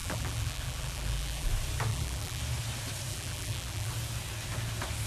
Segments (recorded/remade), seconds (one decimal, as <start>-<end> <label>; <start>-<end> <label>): 0.0-1.5 remade; 1.5-1.9 recorded; 1.9-2.4 remade; 2.4-3.1 recorded; 3.1-3.9 remade; 3.9-5.1 recorded